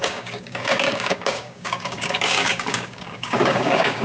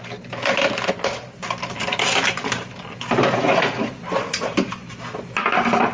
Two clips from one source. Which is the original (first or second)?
second